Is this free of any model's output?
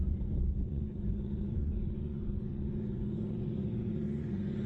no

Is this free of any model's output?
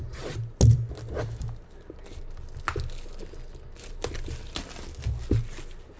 yes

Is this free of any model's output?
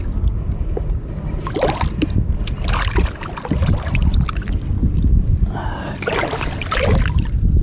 no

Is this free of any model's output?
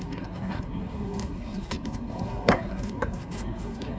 no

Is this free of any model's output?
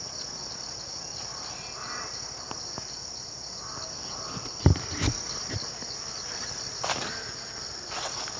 yes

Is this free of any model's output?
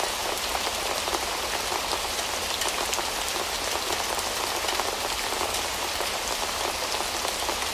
yes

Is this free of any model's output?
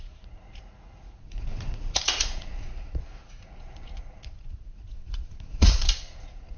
no